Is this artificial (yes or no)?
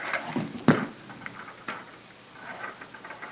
no